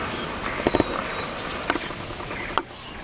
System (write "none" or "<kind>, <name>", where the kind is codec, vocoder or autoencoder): none